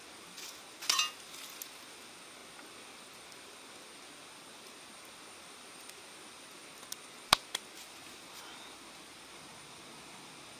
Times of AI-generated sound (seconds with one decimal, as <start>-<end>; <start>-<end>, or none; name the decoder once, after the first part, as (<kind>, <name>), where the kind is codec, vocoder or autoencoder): none